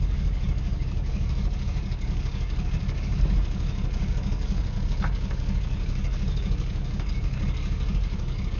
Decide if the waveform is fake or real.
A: fake